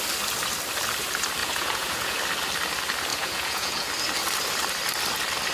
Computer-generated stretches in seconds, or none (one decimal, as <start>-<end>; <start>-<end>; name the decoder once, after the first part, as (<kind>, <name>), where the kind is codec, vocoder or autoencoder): 1.4-2.2 (vocoder, Vocos); 3.1-3.9